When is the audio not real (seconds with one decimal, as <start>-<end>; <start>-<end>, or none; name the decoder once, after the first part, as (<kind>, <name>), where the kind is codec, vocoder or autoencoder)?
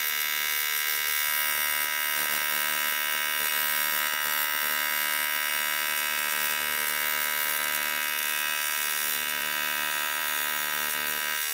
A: none